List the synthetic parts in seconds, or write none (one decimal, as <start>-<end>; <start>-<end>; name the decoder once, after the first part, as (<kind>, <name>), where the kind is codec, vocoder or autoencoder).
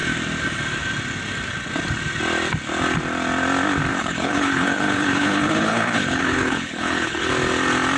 3.9-7.3 (codec, HILCodec)